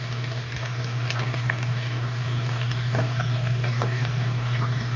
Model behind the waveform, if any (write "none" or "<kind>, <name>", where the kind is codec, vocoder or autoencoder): codec, DAC